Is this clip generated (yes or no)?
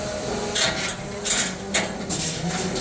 no